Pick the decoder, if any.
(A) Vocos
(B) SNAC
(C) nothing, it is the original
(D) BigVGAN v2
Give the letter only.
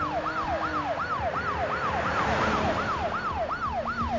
C